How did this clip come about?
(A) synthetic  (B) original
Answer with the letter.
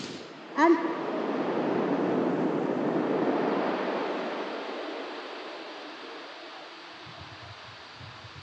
B